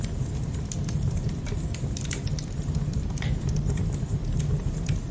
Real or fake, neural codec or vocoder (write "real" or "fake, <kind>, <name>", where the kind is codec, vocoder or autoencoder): real